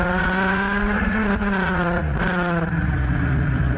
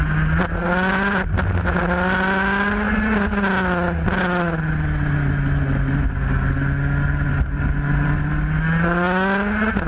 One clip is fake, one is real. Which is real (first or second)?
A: second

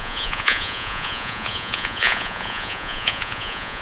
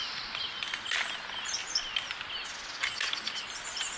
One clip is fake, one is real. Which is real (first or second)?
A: second